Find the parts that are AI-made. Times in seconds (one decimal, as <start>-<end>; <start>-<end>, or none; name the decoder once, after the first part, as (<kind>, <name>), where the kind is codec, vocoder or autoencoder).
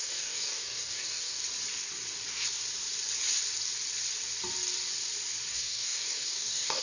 0.0-1.4 (codec, DAC); 5.5-6.8